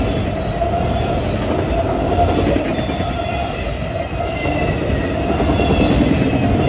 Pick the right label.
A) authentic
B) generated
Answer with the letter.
A